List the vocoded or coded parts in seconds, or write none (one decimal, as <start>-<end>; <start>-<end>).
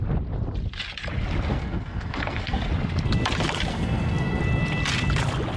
1.5-2.6; 3.7-4.4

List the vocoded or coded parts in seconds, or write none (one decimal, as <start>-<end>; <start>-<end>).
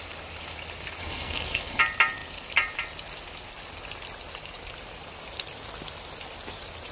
1.0-1.8